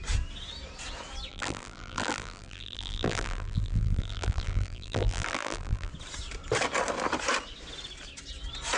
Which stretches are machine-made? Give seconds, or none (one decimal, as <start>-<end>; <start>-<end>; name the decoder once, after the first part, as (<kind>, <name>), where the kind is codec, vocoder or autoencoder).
1.3-5.9 (vocoder, BigVGAN v2)